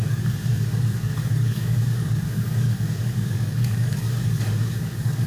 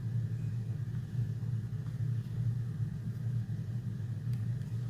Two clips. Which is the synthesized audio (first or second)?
first